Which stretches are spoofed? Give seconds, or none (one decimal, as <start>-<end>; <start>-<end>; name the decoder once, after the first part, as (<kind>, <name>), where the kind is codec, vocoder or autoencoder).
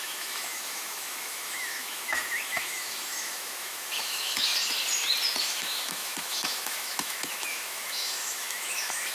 0.0-4.5 (autoencoder, DAC-VAE); 5.4-9.1